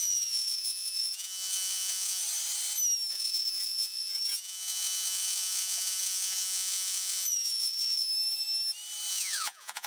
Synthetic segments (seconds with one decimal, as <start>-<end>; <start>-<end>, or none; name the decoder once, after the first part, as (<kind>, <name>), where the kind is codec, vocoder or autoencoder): 0.0-2.2 (vocoder, Vocos); 3.1-8.1; 9.1-9.9